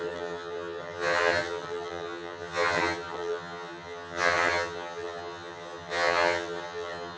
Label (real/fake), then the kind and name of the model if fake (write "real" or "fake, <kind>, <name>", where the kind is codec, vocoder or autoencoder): fake, vocoder, HiFi-GAN